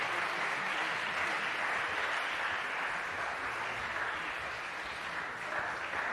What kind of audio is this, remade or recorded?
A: recorded